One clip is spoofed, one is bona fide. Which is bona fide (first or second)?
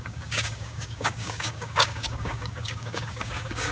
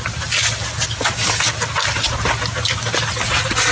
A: second